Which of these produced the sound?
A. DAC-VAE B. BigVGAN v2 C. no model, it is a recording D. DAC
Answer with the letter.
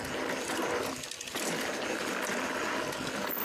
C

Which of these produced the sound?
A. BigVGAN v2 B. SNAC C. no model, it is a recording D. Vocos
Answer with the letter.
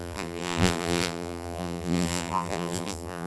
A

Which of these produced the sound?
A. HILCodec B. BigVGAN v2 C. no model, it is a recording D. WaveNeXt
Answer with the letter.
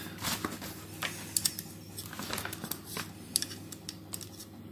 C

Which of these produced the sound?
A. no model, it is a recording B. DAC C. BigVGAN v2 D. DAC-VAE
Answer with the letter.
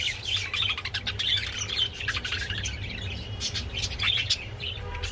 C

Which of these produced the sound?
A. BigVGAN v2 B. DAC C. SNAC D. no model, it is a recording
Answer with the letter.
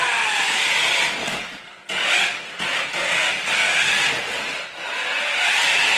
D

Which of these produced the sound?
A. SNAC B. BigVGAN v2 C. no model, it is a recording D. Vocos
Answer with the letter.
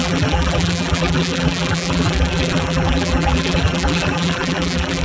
B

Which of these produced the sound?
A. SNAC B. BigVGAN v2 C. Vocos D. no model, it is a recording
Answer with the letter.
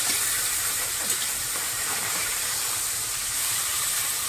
B